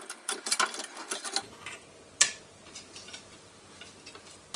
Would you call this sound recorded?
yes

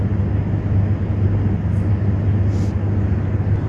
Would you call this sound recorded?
yes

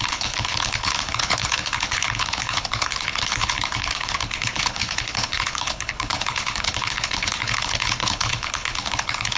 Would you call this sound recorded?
no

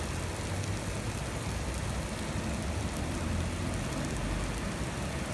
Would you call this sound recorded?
yes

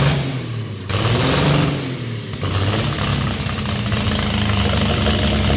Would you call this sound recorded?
yes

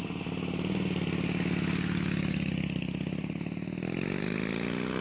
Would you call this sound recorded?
yes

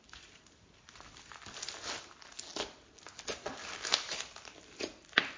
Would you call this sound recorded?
yes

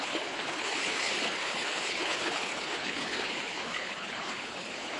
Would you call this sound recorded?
no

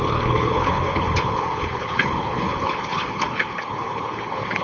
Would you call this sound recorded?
no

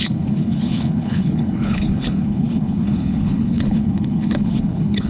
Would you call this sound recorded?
no